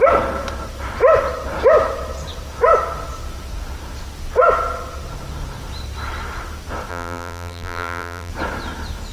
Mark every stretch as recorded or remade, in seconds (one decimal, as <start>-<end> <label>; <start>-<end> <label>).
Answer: 0.0-6.9 recorded; 6.9-8.3 remade; 8.3-9.1 recorded